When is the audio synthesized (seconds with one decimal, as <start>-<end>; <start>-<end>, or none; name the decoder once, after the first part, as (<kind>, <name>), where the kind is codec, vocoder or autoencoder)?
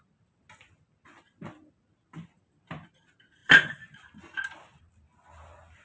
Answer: none